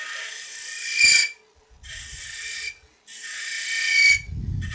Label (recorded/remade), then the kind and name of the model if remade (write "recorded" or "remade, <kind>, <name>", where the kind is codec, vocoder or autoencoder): recorded